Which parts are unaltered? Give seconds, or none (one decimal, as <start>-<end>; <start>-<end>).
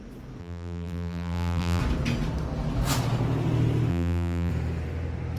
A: 0.0-0.4; 1.8-3.9; 4.5-5.4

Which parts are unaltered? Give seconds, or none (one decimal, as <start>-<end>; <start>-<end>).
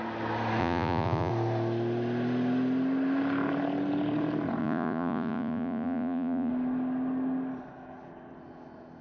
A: 0.0-0.6; 1.3-4.6; 6.5-9.0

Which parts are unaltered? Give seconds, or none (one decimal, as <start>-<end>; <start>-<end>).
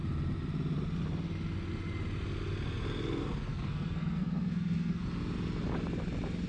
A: 0.0-3.5; 5.0-6.5